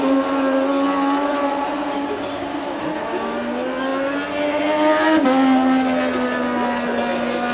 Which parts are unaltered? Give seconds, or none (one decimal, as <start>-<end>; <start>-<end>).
0.0-7.5